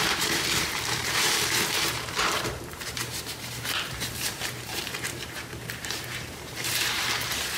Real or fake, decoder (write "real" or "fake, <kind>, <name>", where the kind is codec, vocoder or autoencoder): fake, vocoder, BigVGAN v2